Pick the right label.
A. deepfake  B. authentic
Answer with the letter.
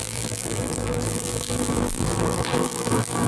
A